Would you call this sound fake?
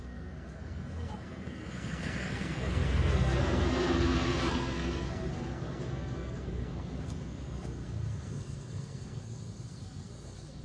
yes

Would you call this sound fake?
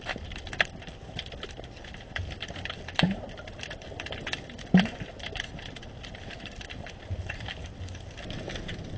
yes